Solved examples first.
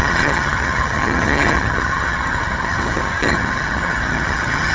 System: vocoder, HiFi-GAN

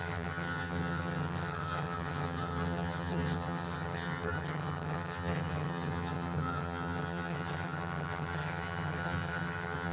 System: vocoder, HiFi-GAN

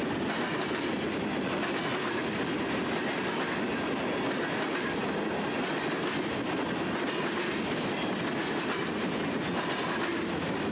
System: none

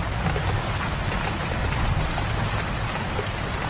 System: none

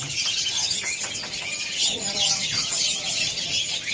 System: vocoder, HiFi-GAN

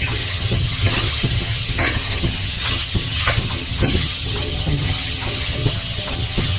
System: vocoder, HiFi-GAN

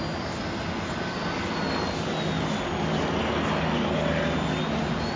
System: none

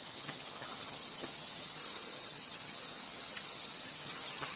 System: vocoder, HiFi-GAN